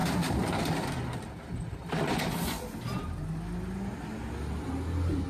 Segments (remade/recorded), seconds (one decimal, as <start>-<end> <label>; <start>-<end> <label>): 0.0-5.3 recorded